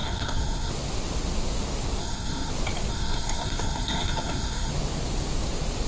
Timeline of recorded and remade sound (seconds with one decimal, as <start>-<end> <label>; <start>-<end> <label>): 0.0-0.7 remade; 0.7-2.0 recorded; 2.0-2.5 remade; 2.5-2.9 recorded; 2.9-4.7 remade; 4.7-5.9 recorded